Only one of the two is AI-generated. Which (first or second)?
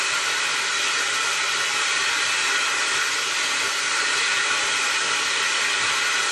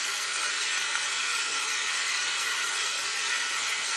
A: second